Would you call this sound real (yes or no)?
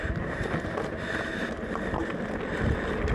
yes